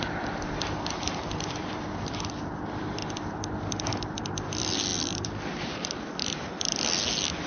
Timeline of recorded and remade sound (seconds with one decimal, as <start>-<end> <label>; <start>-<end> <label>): 0.0-3.0 remade; 3.0-3.6 recorded; 3.6-7.5 remade

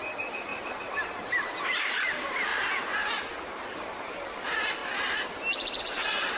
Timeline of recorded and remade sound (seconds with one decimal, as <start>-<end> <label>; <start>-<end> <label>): 0.0-0.5 remade; 0.5-1.3 recorded; 1.3-2.5 remade; 2.5-3.5 recorded; 3.5-4.8 remade; 4.8-5.8 recorded; 5.8-6.4 remade

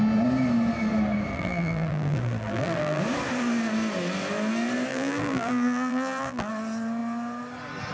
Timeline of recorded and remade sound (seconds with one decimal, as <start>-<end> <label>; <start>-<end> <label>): 0.0-1.3 recorded; 1.3-3.0 remade; 3.0-4.9 recorded; 4.9-6.5 remade; 6.5-7.9 recorded

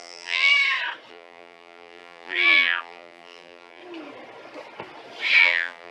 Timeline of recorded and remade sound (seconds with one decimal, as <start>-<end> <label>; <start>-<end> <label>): 0.0-0.5 remade; 0.5-1.1 recorded; 1.1-3.8 remade; 3.8-5.4 recorded; 5.4-5.9 remade